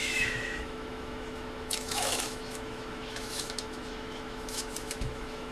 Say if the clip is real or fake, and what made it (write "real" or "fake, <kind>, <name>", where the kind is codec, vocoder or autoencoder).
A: fake, autoencoder, DAC-VAE